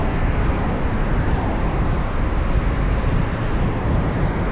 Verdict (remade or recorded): recorded